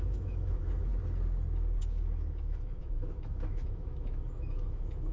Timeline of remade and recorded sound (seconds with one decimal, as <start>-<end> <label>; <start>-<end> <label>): 0.0-0.9 remade; 0.9-1.8 recorded; 1.8-5.1 remade